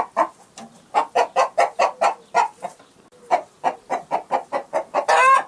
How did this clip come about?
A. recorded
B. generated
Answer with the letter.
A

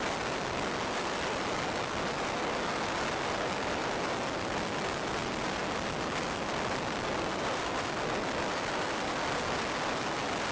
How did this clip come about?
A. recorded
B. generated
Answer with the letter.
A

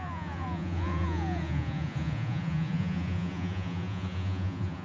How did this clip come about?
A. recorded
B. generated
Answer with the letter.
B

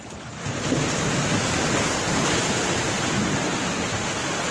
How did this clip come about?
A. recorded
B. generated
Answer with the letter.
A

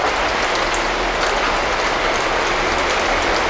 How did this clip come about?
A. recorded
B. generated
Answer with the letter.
A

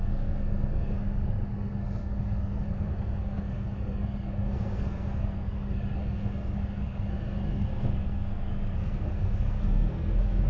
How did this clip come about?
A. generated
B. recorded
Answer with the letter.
A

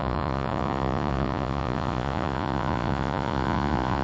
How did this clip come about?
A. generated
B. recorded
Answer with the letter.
A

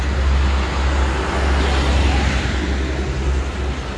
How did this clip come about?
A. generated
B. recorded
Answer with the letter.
B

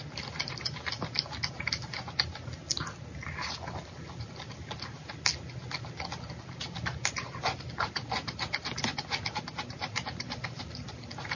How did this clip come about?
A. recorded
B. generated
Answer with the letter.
A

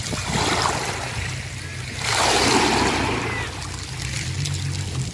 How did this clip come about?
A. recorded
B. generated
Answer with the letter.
A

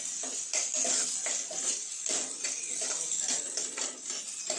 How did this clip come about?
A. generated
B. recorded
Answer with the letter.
B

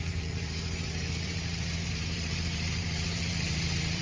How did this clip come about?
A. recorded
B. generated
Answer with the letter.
B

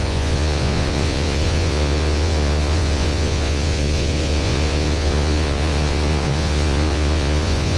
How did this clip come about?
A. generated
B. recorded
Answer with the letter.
A